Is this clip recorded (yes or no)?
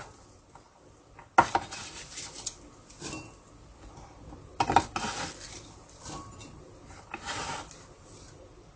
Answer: yes